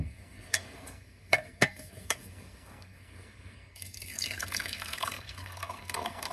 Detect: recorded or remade remade